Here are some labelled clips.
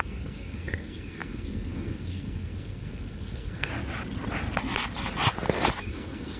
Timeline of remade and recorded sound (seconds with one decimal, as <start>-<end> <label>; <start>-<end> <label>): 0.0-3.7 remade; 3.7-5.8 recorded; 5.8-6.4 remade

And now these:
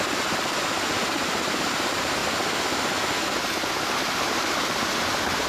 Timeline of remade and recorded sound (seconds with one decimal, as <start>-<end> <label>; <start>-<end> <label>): 0.0-2.2 remade; 2.2-4.3 recorded; 4.3-5.5 remade

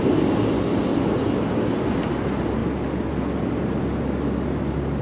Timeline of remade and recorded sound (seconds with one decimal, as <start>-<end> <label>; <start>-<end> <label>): 0.0-5.0 recorded

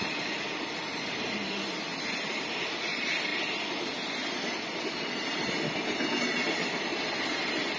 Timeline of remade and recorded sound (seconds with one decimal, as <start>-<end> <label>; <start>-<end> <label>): 0.0-7.8 recorded

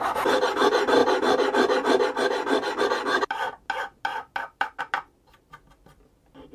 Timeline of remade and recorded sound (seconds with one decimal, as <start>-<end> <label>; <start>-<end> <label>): 0.0-6.5 recorded

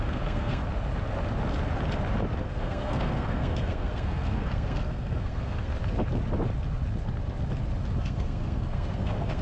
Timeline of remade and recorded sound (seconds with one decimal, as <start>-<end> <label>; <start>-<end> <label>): 0.0-0.6 remade; 0.6-2.4 recorded; 2.4-5.7 remade; 5.7-8.0 recorded; 8.0-9.4 remade